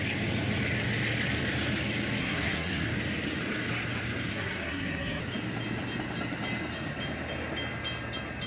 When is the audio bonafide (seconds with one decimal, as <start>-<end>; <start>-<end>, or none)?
0.0-2.2; 2.9-4.3; 5.2-8.5